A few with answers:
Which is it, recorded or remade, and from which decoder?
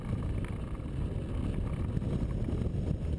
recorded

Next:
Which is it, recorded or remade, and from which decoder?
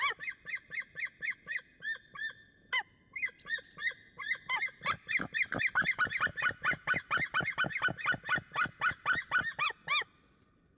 recorded